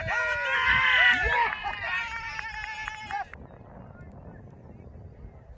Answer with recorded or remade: recorded